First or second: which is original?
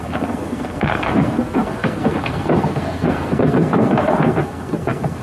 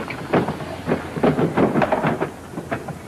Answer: second